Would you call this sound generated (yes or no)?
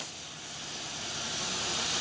no